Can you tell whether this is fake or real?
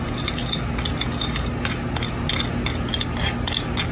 real